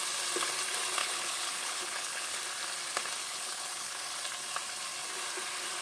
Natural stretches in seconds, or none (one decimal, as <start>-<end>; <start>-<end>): 0.0-1.0; 2.4-3.2; 4.0-5.8